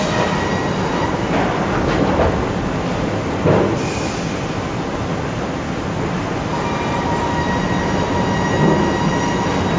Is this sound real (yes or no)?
yes